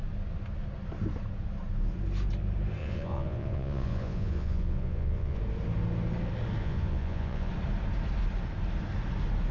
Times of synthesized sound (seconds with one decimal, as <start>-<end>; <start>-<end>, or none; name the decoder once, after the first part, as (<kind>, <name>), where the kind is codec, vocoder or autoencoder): 2.8-5.4 (vocoder, Vocos); 6.6-7.5